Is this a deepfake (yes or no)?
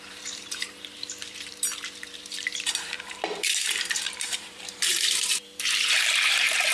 yes